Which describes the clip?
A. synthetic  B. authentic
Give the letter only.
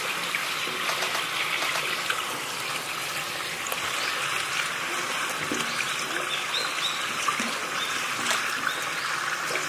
B